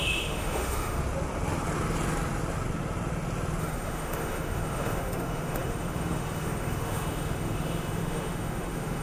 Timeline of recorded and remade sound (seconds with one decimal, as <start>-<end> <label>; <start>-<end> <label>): 0.0-1.0 remade; 1.0-3.6 recorded; 3.6-9.0 remade